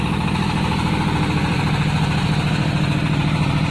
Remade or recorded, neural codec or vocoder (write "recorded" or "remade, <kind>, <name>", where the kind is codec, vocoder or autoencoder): remade, vocoder, BigVGAN v2